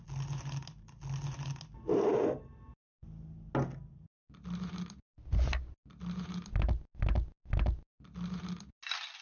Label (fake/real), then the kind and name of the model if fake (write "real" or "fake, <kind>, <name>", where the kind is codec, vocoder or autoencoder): real